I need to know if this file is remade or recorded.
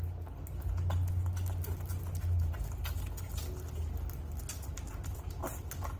recorded